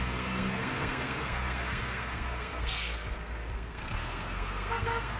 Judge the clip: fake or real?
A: fake